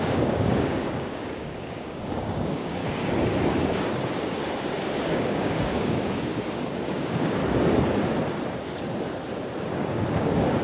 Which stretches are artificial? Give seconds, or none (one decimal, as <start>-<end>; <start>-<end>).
0.0-2.8; 4.8-7.4; 9.6-10.6